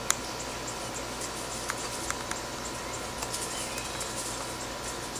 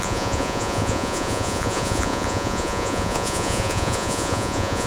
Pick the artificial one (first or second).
second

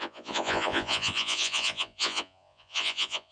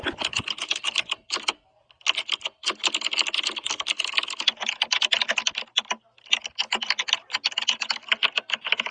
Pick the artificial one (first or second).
first